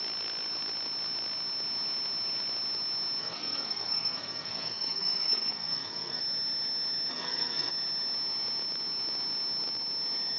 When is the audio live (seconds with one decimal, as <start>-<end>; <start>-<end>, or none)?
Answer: 0.0-3.2; 6.2-7.1; 7.7-10.4